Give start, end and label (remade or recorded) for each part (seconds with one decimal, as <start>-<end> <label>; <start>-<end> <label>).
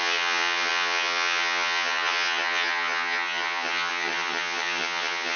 0.0-5.4 remade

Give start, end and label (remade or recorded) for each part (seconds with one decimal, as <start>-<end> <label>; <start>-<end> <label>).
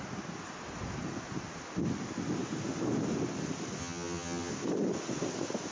0.0-3.8 recorded; 3.8-4.5 remade; 4.5-5.7 recorded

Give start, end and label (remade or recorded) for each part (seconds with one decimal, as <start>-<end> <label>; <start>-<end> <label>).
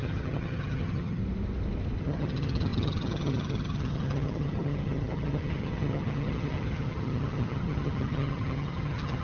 0.0-1.2 remade; 1.2-2.0 recorded; 2.0-9.2 remade